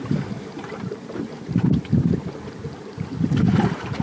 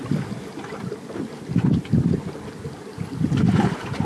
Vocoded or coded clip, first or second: first